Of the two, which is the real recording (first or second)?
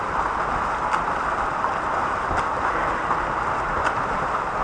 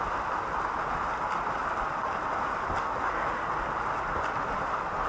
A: second